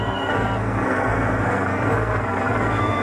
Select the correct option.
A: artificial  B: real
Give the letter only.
A